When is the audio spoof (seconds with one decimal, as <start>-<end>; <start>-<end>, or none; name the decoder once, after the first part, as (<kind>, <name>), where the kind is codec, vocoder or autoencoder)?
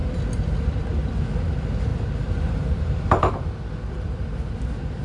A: 0.0-1.1 (vocoder, BigVGAN v2); 1.9-3.3